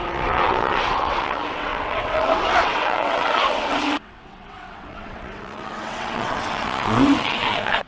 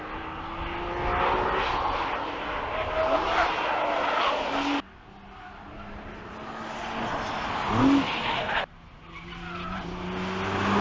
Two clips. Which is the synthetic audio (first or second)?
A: first